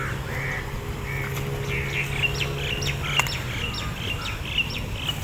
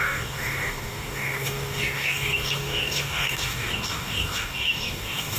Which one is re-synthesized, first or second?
second